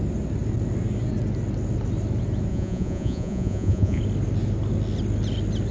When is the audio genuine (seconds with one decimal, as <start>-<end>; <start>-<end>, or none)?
0.0-2.5; 4.0-5.7